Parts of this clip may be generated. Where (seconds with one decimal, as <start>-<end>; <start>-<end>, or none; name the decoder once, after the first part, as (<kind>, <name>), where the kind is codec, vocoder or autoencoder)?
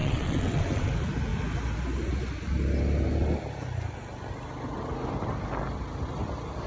0.0-0.9 (vocoder, WaveNeXt)